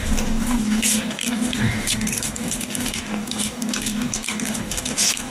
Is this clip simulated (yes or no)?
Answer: yes